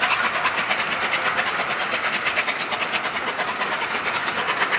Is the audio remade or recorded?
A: recorded